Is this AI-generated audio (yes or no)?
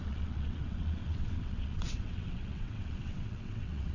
yes